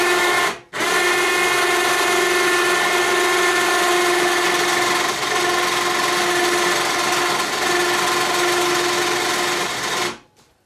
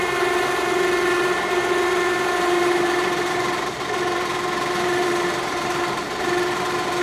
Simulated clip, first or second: second